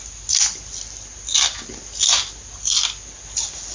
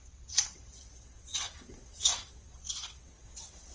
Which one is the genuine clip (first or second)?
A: first